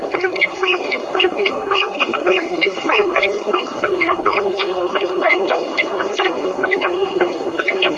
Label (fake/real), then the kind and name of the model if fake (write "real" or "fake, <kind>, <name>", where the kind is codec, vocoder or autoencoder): fake, codec, SNAC